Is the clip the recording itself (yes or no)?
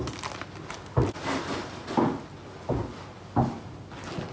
yes